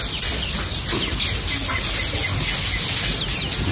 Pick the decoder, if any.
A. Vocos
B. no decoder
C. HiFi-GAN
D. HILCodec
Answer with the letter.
B